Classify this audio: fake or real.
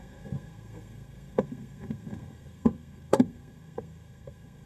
fake